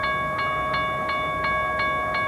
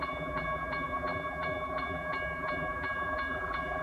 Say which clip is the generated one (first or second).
second